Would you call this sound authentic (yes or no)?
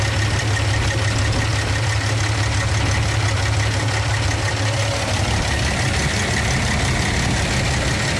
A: yes